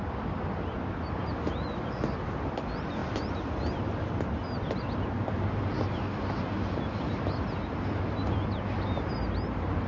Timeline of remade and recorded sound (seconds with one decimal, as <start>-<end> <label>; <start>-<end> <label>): 0.0-9.9 recorded